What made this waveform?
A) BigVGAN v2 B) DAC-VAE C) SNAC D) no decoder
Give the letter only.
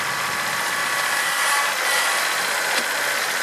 D